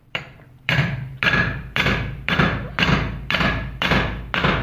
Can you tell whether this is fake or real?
fake